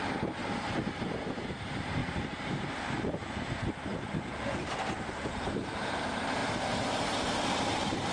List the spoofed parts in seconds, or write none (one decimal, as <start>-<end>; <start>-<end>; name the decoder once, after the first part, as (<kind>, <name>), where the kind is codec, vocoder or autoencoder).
0.0-0.4 (vocoder, BigVGAN v2); 1.3-2.0; 2.6-8.1